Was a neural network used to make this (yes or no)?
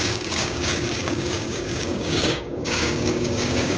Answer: yes